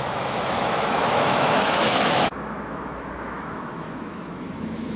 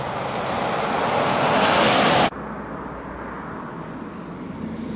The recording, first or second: second